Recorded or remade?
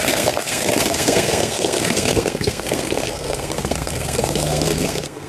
remade